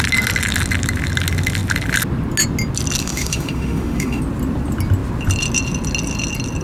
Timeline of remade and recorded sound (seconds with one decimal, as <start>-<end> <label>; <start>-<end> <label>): 0.0-3.0 recorded; 3.0-4.2 remade; 4.2-6.6 recorded